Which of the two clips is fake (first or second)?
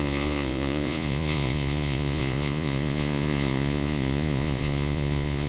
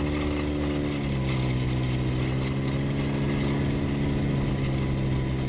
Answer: first